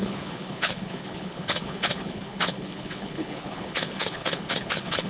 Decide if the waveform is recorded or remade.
remade